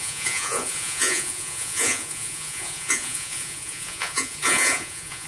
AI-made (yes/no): yes